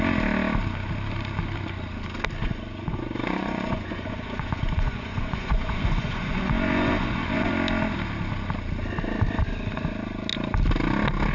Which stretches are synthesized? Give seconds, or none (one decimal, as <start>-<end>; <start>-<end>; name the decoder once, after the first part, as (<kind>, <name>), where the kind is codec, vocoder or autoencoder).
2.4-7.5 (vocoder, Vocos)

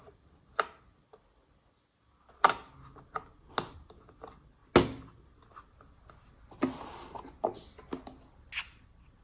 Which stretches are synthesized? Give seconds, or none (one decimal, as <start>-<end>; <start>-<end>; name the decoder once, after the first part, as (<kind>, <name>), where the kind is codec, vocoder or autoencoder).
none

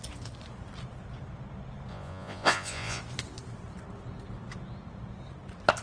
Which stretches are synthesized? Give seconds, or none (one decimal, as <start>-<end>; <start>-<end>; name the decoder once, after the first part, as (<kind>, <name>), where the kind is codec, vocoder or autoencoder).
1.9-3.0 (vocoder, Vocos)

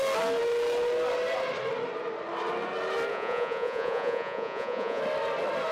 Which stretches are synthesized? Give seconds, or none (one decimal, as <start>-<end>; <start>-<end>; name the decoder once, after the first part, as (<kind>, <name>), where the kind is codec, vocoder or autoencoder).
3.1-5.0 (vocoder, Vocos)

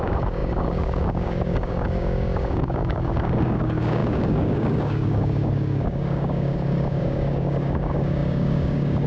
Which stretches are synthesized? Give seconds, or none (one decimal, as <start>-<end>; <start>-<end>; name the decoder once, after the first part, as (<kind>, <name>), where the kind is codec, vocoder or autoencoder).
0.0-9.1 (codec, DAC)

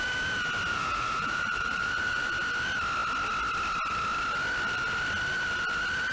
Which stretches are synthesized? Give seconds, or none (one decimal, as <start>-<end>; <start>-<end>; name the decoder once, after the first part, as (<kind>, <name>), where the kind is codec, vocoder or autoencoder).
0.7-2.3 (vocoder, Vocos)

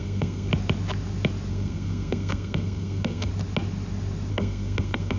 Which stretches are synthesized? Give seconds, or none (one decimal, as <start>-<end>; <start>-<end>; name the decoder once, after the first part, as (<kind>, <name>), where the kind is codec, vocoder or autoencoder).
0.0-0.5 (codec, SNAC); 1.5-3.3; 4.3-5.2

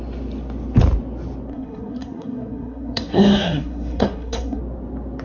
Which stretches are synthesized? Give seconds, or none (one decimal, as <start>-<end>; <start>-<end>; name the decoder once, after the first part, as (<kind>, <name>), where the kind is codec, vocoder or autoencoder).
1.5-4.6 (codec, SNAC)